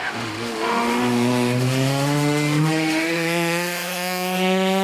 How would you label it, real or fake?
fake